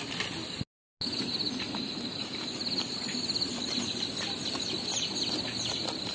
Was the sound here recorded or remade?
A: recorded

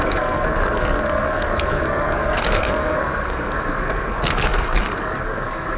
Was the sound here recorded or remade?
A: remade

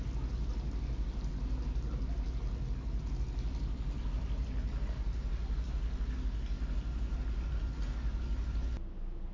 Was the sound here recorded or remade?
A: recorded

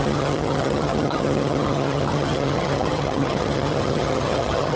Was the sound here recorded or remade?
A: remade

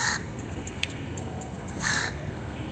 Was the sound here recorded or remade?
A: remade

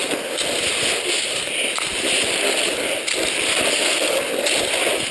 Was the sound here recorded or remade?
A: recorded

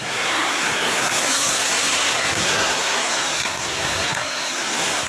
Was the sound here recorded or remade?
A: remade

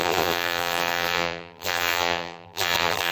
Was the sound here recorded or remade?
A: remade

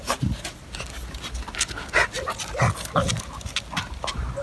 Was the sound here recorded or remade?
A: recorded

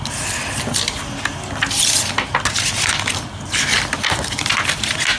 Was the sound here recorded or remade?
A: recorded